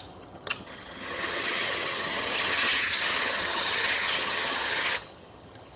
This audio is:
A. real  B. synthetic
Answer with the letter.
B